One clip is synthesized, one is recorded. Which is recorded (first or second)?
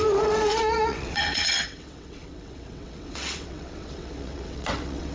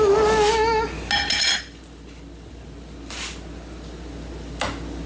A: second